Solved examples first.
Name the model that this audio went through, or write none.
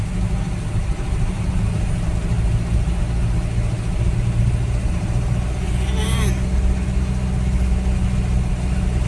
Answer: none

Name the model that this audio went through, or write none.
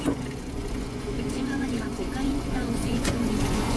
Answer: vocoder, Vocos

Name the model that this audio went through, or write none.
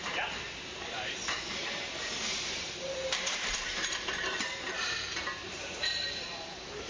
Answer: vocoder, BigVGAN v2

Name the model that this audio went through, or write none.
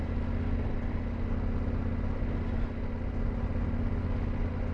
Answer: none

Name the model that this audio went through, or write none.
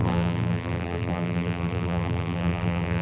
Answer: vocoder, BigVGAN v2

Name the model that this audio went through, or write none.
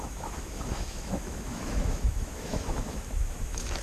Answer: autoencoder, DAC-VAE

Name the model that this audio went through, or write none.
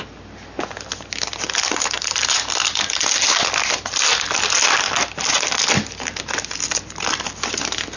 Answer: none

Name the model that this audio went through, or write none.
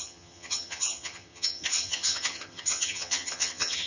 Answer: vocoder, HiFi-GAN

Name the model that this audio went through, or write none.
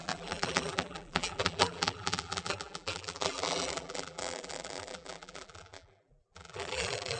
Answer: vocoder, BigVGAN v2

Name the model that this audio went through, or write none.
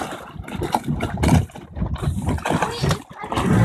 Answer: none